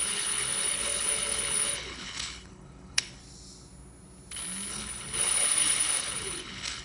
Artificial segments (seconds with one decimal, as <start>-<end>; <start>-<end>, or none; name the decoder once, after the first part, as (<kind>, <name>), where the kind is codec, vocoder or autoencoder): 0.0-3.2 (codec, HILCodec); 4.7-6.8